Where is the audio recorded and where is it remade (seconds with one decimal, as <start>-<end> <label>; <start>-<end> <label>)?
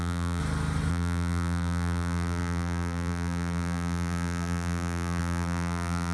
0.0-0.4 remade; 0.4-0.9 recorded; 0.9-6.1 remade